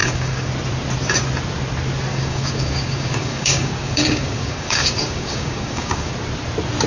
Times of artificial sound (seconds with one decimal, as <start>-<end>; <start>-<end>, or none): 0.0-0.5; 2.1-6.1